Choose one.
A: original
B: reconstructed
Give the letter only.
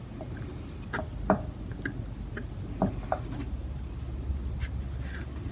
A